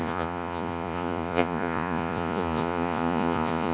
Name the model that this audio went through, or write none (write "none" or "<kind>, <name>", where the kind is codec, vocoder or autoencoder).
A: vocoder, Vocos